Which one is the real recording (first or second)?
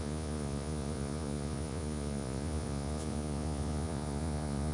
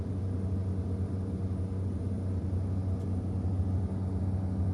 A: second